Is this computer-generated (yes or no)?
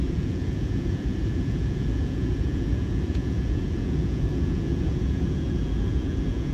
yes